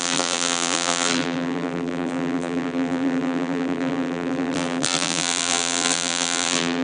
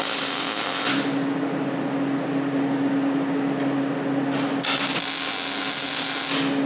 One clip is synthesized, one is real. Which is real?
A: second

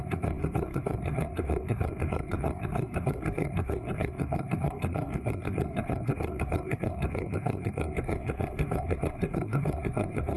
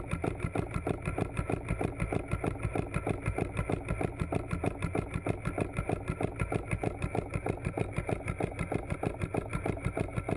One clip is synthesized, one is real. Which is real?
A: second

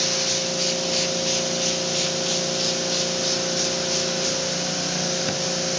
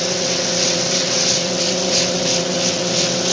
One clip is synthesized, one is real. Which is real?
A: first